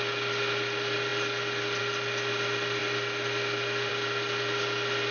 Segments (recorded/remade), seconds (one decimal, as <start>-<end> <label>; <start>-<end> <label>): 0.0-5.1 recorded

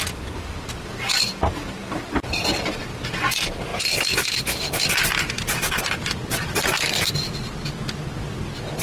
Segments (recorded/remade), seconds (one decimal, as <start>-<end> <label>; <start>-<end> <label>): 0.0-8.8 recorded